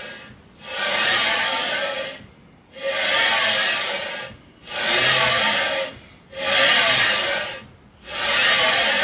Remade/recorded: recorded